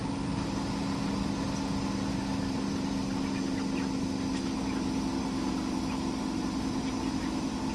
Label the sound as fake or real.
real